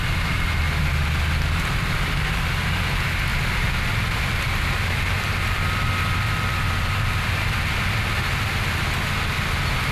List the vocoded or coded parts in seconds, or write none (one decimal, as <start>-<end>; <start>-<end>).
3.3-7.9